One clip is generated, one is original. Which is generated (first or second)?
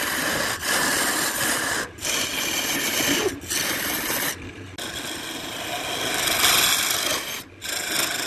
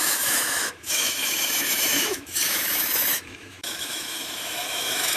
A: second